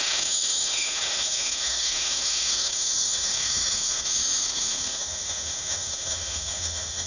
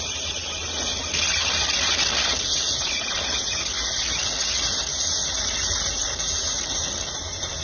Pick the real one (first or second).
second